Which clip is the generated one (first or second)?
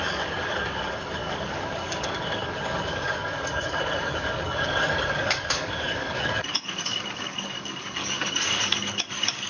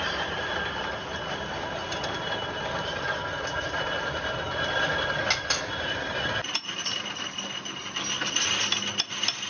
first